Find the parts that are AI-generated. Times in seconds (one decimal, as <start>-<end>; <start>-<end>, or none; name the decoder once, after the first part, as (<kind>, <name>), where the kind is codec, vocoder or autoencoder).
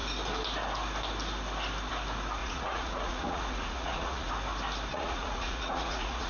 2.4-4.3 (vocoder, Vocos); 4.9-6.3